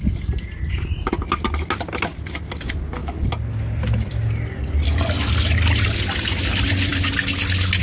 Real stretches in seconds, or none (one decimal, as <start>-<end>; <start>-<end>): 0.0-7.8